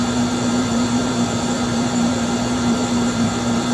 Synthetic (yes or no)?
yes